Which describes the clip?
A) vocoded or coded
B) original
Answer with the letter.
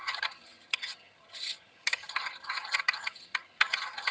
A